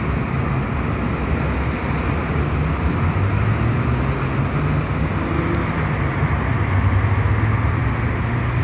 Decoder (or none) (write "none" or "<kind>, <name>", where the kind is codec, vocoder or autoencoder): none